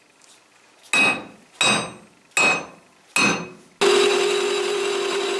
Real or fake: real